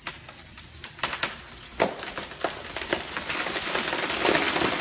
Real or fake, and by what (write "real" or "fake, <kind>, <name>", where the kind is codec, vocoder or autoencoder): real